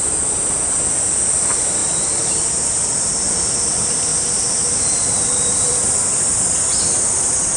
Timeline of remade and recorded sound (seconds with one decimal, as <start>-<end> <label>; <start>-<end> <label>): 0.0-1.8 recorded; 1.8-2.4 remade; 2.4-4.1 recorded; 4.1-5.8 remade; 5.8-7.6 recorded